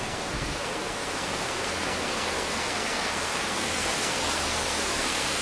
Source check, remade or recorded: remade